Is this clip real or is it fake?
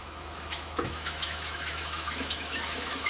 fake